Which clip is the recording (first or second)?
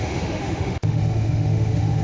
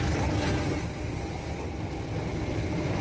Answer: second